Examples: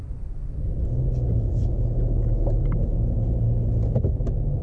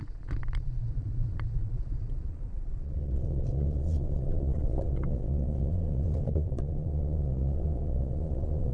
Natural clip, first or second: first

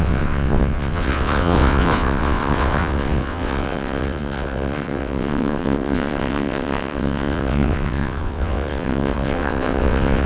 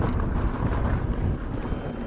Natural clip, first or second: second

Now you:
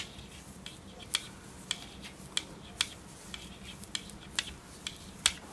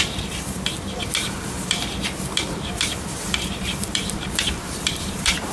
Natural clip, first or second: first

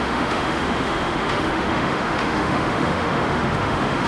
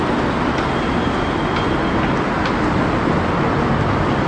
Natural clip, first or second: second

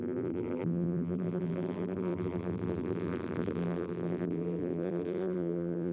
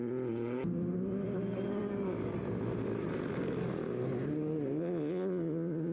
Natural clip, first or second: second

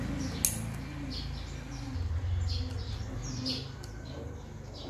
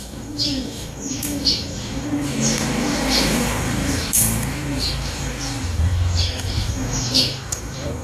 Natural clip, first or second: first